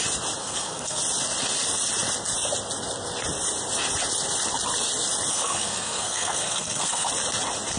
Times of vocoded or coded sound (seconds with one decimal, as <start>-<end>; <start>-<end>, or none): 0.4-1.0; 5.3-7.1